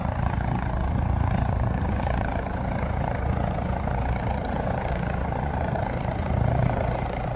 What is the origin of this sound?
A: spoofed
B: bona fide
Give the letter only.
A